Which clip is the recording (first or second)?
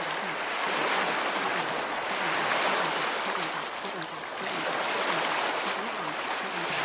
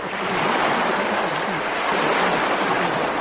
first